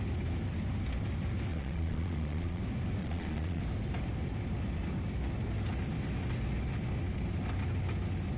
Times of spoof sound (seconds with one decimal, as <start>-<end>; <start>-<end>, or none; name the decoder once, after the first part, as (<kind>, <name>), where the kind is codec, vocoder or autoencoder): 1.5-2.6 (vocoder, Vocos); 3.0-3.6